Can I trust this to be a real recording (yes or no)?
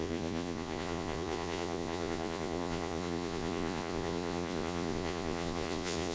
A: no